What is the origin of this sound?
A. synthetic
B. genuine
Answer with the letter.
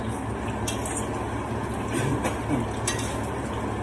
B